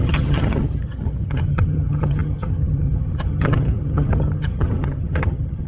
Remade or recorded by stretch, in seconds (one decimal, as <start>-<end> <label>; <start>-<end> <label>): 0.0-5.7 remade